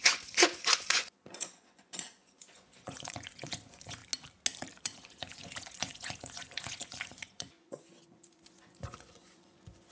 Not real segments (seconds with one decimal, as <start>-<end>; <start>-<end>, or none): 0.0-4.0; 4.8-9.9